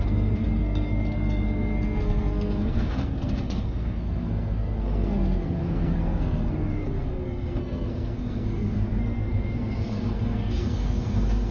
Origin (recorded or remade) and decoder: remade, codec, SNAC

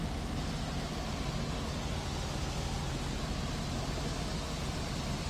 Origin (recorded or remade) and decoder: recorded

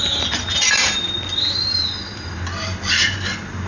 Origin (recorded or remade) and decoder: recorded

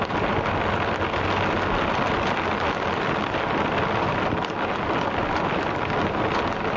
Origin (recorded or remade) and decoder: recorded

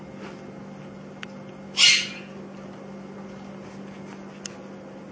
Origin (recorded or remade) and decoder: recorded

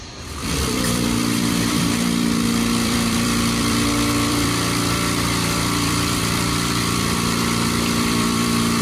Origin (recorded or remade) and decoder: remade, vocoder, BigVGAN v2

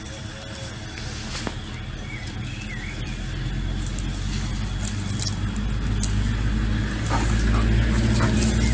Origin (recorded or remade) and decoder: recorded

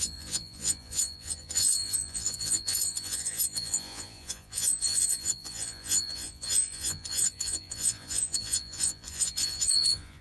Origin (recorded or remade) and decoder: remade, vocoder, Vocos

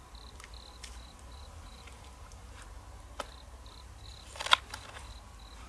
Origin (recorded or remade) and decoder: recorded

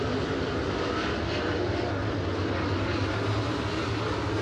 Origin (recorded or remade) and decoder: recorded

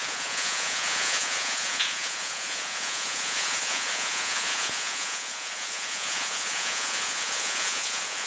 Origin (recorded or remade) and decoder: remade, vocoder, Vocos